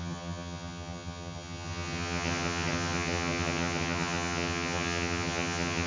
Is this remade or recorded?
remade